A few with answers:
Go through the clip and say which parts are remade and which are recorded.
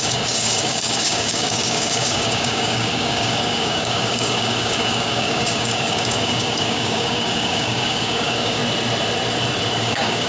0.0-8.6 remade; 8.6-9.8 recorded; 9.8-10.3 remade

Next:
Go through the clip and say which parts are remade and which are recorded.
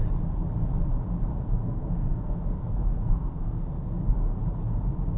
0.0-1.3 recorded; 1.3-4.4 remade; 4.4-5.2 recorded